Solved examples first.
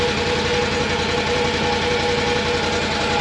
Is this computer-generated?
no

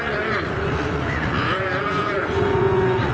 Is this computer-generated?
yes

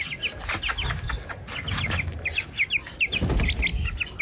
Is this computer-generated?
no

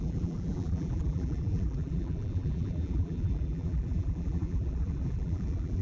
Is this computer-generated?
yes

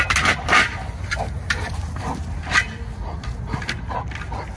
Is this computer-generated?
no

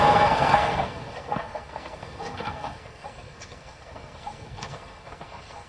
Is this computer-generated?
yes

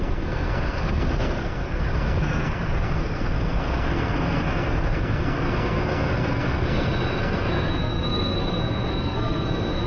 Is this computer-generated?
yes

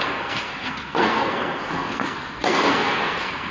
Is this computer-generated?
yes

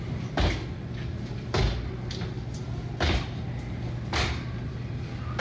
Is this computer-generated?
no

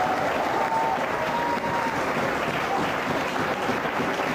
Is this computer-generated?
no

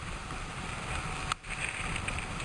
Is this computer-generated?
no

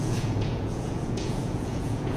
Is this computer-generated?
yes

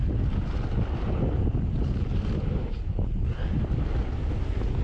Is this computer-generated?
no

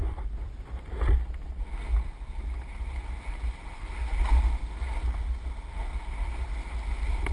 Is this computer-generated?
no